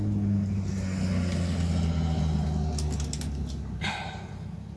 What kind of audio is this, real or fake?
real